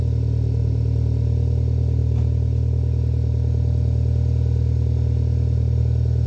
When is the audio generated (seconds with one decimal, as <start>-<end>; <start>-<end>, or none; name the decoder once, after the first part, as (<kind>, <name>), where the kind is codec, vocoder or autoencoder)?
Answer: none